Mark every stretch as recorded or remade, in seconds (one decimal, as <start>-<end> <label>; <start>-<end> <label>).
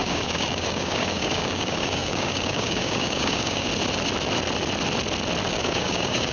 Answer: 0.0-3.7 remade; 3.7-5.5 recorded; 5.5-6.3 remade